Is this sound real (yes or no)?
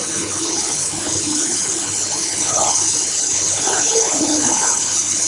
no